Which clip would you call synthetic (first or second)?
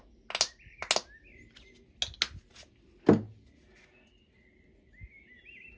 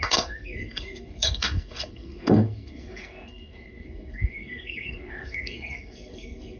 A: second